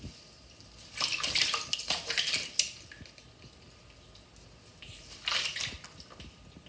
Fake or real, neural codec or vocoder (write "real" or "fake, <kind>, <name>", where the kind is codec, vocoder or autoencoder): real